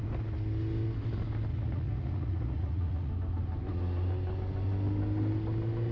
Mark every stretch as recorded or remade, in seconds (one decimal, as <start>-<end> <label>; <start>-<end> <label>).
0.0-1.5 recorded; 1.5-3.1 remade; 3.1-5.9 recorded